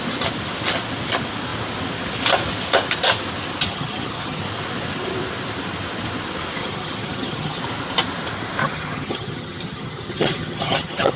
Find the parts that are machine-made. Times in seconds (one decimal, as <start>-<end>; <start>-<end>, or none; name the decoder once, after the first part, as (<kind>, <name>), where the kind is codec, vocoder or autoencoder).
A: 3.7-4.4 (vocoder, HiFi-GAN); 6.6-7.6; 8.6-11.2